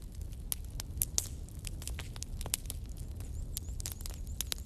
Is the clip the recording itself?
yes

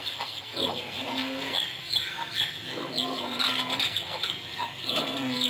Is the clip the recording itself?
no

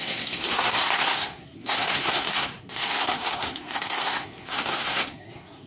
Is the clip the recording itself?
no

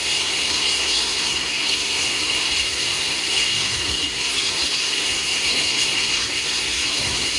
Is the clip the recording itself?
no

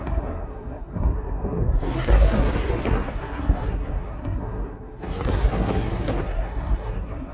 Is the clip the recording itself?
no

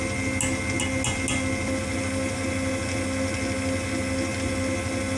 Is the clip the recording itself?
yes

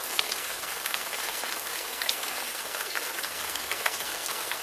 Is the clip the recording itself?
no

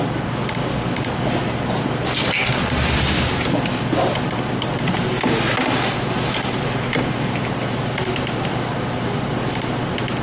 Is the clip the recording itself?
yes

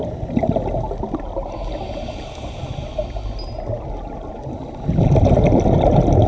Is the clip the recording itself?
yes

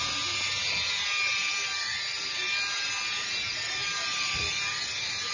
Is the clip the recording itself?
yes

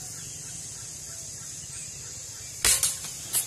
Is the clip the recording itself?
yes